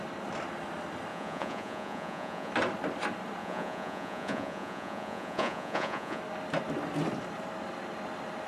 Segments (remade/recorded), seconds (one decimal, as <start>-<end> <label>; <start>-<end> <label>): 0.0-1.1 recorded; 1.1-2.5 remade; 2.5-3.4 recorded; 3.4-6.2 remade; 6.2-8.5 recorded